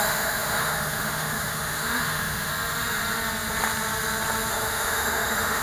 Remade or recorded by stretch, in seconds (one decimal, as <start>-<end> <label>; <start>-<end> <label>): 0.0-2.5 remade; 2.5-4.5 recorded; 4.5-5.6 remade